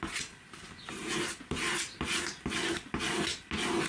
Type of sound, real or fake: real